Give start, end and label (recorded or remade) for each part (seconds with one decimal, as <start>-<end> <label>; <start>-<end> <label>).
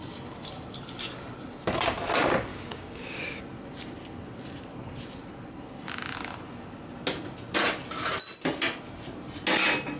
0.0-2.5 recorded; 2.5-3.2 remade; 3.2-10.0 recorded